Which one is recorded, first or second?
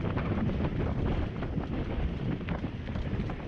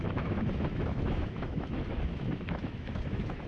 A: first